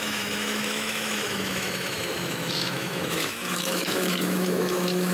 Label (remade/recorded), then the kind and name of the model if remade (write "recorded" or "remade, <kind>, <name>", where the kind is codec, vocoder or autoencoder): remade, autoencoder, DAC-VAE